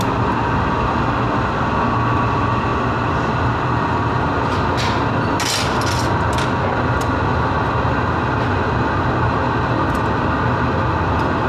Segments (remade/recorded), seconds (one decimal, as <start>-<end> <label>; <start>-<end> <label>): 0.0-11.5 recorded